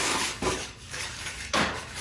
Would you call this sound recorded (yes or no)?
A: no